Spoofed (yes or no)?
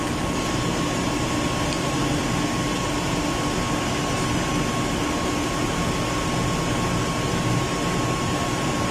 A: no